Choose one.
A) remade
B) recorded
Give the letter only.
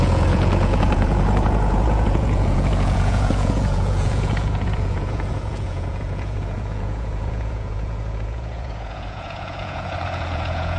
A